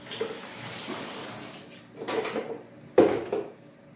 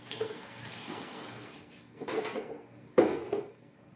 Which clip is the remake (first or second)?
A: second